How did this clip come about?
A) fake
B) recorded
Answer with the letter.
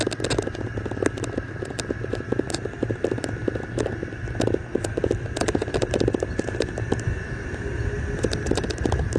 B